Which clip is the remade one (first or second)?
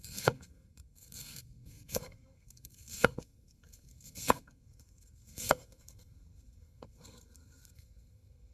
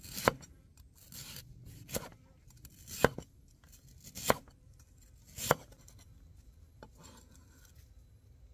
first